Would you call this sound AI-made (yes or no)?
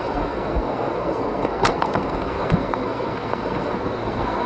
yes